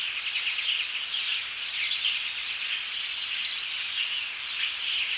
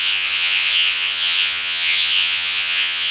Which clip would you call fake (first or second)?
second